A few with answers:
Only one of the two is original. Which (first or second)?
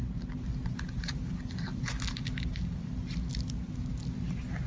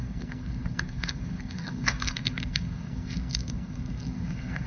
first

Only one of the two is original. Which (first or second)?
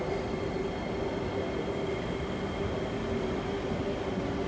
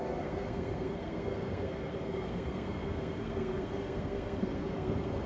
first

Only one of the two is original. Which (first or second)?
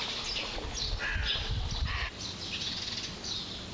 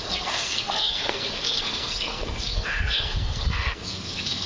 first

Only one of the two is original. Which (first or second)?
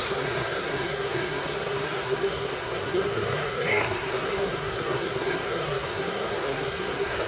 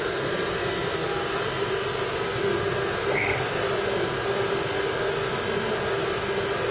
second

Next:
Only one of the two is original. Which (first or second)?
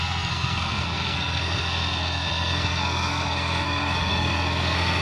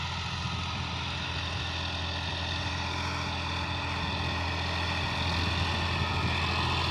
second